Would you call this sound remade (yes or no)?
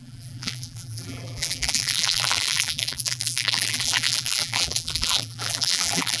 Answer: yes